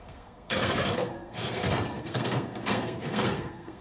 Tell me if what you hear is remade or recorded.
remade